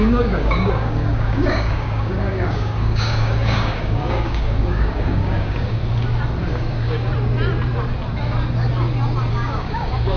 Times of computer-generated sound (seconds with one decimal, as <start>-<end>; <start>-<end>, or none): 0.0-5.8; 6.5-7.1; 9.3-10.2